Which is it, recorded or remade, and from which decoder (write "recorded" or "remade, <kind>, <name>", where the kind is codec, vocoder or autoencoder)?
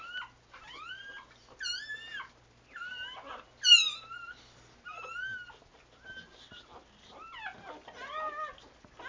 recorded